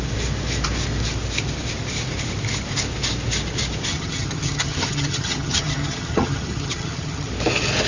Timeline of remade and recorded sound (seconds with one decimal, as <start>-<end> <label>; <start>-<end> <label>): 0.0-3.9 recorded; 3.9-7.3 remade; 7.3-7.9 recorded